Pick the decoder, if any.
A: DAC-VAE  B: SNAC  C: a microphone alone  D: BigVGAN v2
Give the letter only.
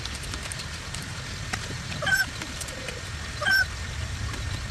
D